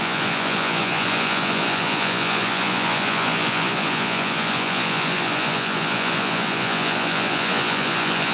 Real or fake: fake